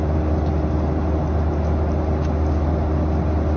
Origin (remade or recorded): recorded